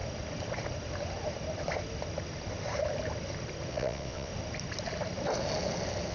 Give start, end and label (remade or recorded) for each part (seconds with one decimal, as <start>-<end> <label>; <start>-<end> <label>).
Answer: 0.0-3.7 recorded; 3.7-4.3 remade; 4.3-6.1 recorded